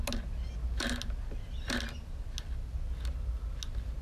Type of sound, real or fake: real